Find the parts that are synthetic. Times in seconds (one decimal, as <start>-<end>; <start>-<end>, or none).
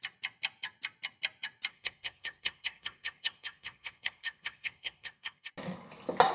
1.7-5.5